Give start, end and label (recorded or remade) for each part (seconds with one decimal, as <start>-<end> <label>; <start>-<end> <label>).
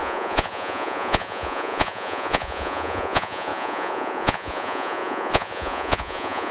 0.0-6.5 remade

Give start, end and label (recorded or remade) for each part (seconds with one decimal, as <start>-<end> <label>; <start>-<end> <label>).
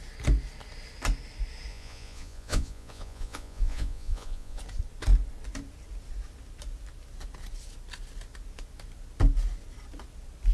0.0-1.7 recorded; 1.7-4.6 remade; 4.6-10.5 recorded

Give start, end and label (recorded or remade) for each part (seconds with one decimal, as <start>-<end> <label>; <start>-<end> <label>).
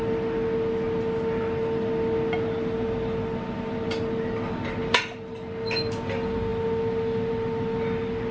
0.0-8.3 recorded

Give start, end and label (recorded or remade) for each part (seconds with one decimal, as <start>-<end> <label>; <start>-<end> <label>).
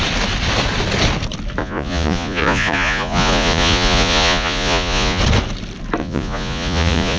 0.0-1.6 recorded; 1.6-5.2 remade; 5.2-6.0 recorded; 6.0-7.2 remade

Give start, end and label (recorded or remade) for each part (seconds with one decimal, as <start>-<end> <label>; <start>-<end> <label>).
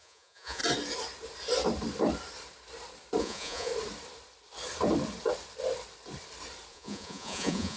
0.0-0.6 remade; 0.6-3.2 recorded; 3.2-3.7 remade; 3.7-6.7 recorded; 6.7-7.8 remade